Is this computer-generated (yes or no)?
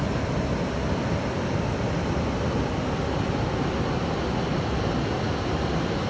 no